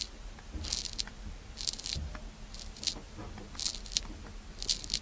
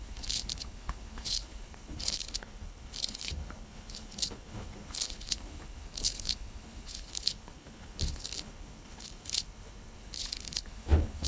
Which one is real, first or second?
first